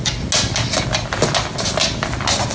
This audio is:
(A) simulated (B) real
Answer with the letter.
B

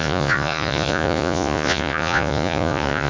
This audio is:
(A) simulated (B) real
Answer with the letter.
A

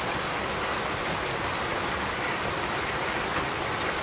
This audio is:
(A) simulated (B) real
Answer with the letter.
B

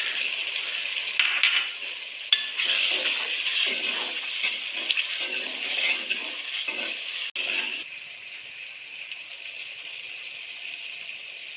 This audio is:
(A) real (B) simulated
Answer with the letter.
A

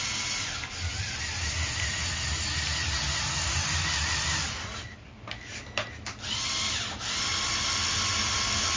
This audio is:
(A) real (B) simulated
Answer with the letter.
A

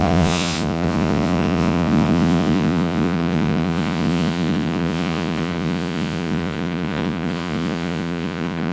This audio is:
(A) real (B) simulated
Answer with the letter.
B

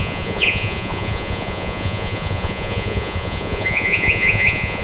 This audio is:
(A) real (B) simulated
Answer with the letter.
B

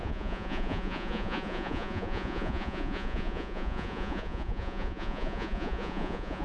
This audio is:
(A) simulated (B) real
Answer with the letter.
A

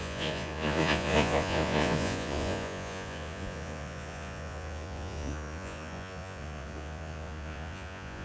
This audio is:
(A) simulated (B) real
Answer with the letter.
A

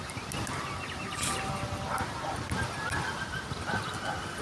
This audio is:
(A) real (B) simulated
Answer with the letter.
A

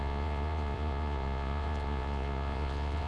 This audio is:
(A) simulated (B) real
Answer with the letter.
A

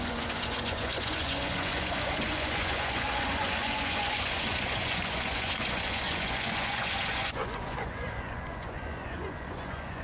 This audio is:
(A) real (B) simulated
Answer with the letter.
B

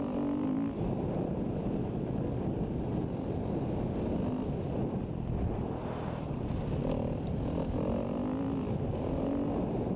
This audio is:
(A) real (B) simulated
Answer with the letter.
A